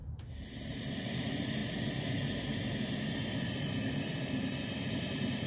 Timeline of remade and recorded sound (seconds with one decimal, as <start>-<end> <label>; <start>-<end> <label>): 0.0-1.6 remade; 1.6-4.9 recorded; 4.9-5.5 remade